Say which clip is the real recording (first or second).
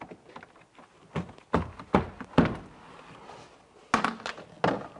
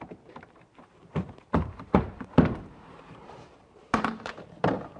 first